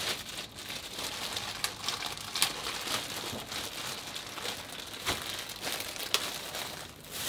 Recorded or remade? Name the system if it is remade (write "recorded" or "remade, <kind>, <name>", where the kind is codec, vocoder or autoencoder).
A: recorded